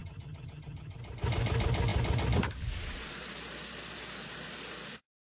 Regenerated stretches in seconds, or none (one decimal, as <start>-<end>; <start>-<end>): 0.0-1.0